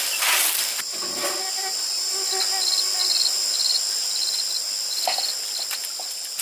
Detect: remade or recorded recorded